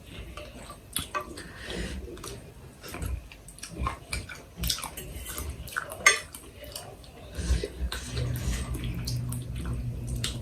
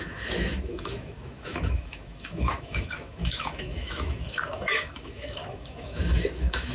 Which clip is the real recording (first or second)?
first